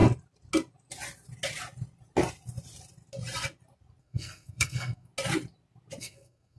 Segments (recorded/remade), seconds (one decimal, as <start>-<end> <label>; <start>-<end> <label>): 0.0-4.0 recorded; 4.0-5.1 remade; 5.1-6.0 recorded; 6.0-6.6 remade